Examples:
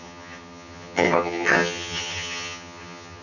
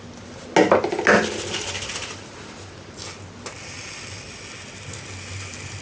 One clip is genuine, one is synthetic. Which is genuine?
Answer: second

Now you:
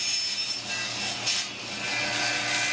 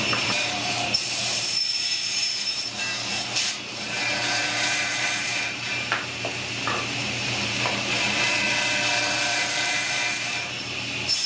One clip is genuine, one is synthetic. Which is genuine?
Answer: first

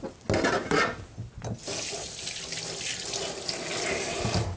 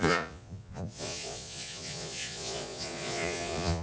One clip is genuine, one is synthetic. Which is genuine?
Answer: first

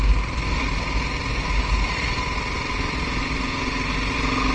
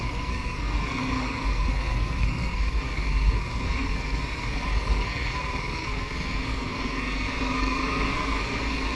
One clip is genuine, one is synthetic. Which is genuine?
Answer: first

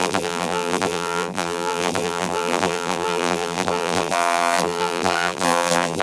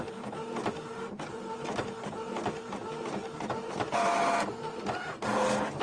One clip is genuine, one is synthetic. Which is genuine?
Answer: second